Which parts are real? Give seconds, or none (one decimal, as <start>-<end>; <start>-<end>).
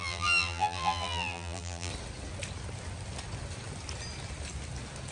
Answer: 1.9-5.1